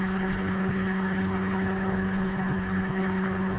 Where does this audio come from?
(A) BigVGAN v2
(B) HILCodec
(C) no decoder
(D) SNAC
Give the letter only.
B